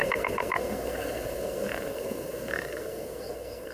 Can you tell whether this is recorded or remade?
remade